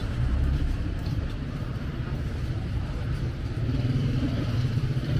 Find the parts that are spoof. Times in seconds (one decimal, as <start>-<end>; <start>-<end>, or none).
0.0-5.2